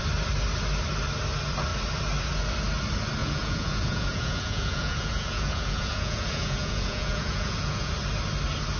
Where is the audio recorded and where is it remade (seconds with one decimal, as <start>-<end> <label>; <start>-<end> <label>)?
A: 0.0-3.2 recorded; 3.2-7.9 remade; 7.9-8.8 recorded